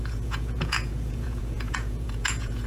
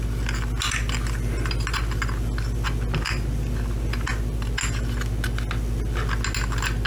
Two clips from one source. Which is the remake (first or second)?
first